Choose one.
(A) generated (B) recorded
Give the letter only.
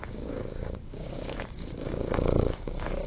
A